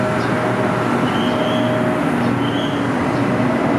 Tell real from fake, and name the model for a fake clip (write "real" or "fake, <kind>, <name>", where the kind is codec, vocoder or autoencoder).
real